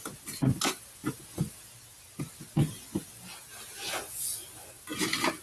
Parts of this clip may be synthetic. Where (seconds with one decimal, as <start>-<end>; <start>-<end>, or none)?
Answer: none

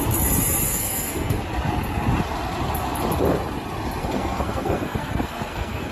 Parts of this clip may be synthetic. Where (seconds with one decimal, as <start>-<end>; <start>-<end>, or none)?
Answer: 0.7-1.4; 4.0-5.9